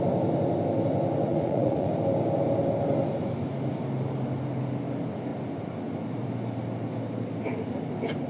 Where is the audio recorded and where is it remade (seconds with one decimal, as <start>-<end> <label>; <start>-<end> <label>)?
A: 0.0-1.3 recorded; 1.3-1.9 remade; 1.9-8.3 recorded